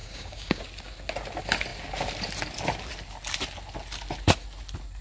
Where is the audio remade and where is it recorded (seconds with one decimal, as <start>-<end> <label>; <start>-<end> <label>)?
0.0-0.6 remade; 0.6-5.0 recorded